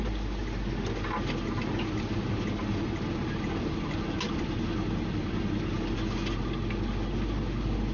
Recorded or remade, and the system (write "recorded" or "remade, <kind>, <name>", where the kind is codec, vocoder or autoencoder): recorded